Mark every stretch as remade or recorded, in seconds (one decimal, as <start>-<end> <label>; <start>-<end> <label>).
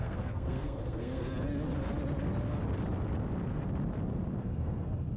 0.0-1.3 remade; 1.3-4.4 recorded; 4.4-5.2 remade